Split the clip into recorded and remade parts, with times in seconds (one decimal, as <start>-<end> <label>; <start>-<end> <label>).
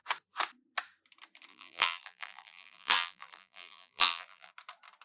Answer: 0.0-1.5 recorded; 1.5-4.5 remade; 4.5-5.0 recorded